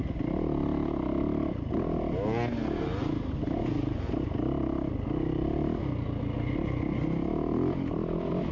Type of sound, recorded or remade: recorded